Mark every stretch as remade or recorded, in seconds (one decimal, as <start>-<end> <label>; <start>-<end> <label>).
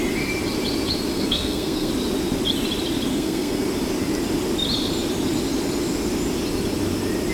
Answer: 0.0-1.1 recorded; 1.1-1.9 remade; 1.9-3.1 recorded; 3.1-3.6 remade; 3.6-7.3 recorded